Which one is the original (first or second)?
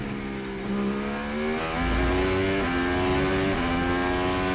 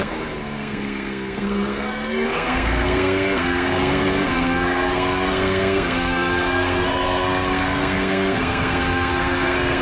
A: first